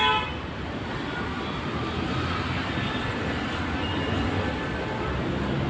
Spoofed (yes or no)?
no